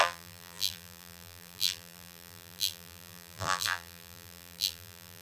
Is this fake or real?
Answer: fake